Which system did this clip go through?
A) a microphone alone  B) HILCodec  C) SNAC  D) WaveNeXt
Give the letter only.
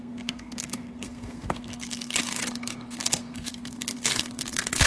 C